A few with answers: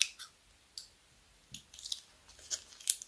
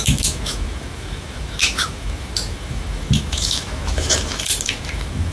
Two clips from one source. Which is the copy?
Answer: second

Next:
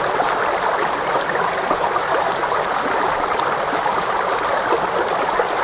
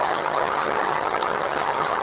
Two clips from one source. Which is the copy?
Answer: second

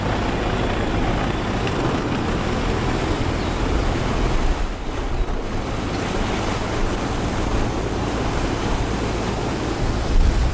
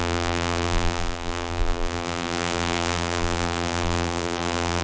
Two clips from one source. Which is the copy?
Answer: second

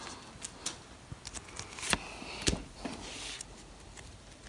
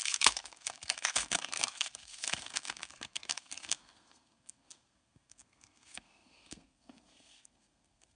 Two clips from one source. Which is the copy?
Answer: second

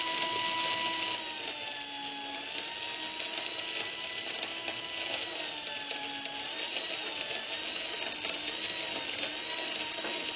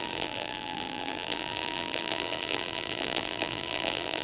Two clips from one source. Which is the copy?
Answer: second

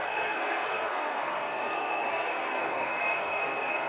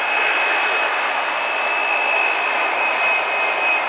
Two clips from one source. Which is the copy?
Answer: first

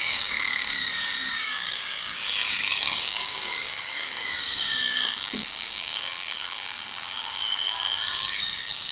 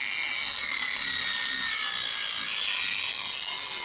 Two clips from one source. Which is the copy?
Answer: first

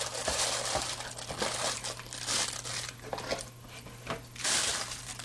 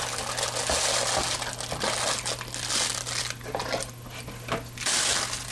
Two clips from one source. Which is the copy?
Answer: first